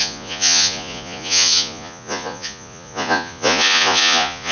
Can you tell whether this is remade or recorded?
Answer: remade